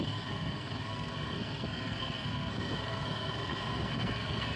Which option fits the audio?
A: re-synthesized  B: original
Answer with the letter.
A